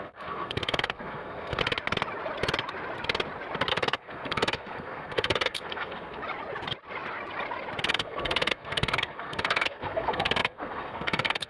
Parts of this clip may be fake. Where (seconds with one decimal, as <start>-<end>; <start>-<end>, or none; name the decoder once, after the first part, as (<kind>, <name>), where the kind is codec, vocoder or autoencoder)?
0.0-1.6 (codec, SNAC); 3.7-6.2; 7.9-11.5